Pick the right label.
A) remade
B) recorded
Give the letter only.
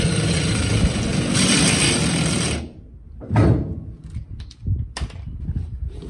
B